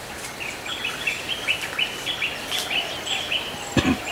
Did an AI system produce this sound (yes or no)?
no